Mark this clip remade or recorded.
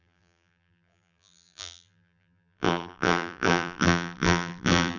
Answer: remade